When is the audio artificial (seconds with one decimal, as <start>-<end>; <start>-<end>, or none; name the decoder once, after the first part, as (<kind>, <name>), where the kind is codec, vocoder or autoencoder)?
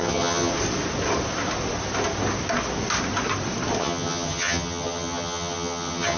0.0-0.5 (vocoder, HiFi-GAN); 3.8-6.2